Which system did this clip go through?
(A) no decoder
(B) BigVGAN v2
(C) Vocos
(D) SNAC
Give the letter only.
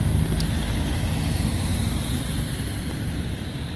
A